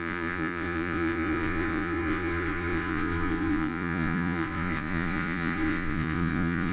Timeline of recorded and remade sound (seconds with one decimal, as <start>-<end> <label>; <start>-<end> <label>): 0.0-6.7 remade

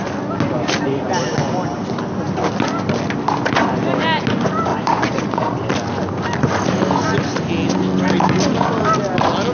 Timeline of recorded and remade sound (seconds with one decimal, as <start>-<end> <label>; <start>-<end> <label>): 0.0-4.7 recorded; 4.7-5.7 remade; 5.7-9.5 recorded

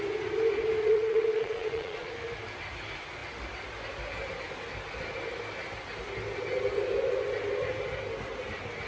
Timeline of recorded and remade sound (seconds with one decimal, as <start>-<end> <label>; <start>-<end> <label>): 0.0-0.8 recorded; 0.8-2.1 remade; 2.1-8.9 recorded

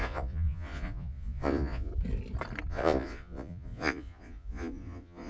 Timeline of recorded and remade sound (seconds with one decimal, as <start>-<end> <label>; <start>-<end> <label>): 0.0-1.9 remade; 1.9-2.7 recorded; 2.7-5.3 remade

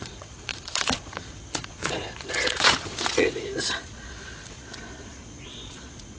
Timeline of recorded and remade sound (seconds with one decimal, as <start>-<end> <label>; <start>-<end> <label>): 0.0-6.2 remade